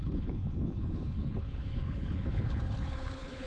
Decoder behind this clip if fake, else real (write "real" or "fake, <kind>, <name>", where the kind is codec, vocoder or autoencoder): fake, codec, HILCodec